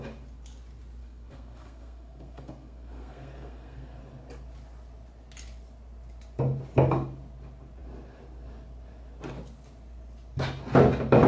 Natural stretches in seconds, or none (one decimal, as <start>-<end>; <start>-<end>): 0.0-1.0; 4.0-11.3

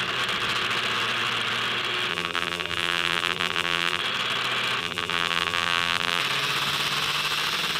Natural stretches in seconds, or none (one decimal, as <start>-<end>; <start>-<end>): 0.0-2.1; 4.0-4.8; 6.2-7.8

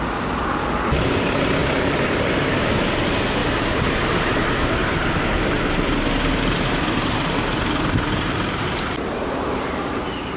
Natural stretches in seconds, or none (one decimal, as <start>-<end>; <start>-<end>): 0.0-1.6; 2.7-3.4; 4.3-4.8; 9.9-10.4

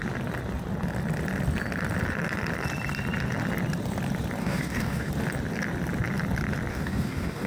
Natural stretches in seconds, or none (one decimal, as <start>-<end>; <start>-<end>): 0.0-4.4; 5.1-6.7

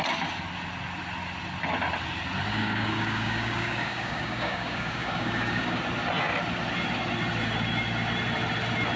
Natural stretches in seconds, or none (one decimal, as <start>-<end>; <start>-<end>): 0.0-2.5; 5.8-9.0

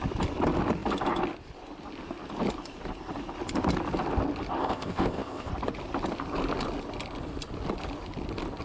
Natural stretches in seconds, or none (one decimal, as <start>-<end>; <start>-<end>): 0.0-4.6; 5.5-8.6